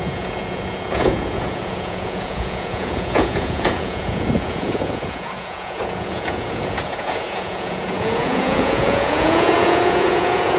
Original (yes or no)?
no